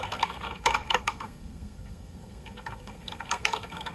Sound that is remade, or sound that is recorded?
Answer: remade